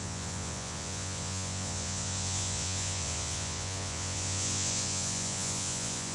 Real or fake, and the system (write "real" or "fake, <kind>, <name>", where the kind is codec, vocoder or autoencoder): fake, vocoder, Vocos